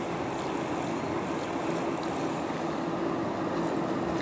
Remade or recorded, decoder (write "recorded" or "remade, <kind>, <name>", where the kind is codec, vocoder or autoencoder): recorded